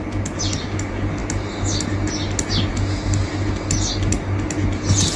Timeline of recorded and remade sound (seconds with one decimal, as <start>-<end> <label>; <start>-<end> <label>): 0.0-5.2 recorded